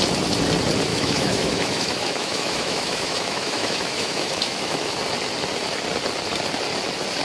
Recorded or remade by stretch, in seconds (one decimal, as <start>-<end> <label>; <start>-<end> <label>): 0.0-0.9 recorded; 0.9-4.9 remade; 4.9-7.2 recorded